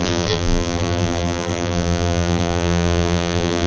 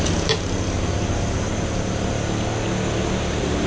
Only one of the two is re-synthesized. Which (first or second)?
first